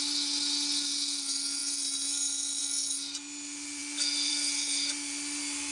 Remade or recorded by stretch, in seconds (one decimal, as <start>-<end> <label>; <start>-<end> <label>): 0.0-5.7 recorded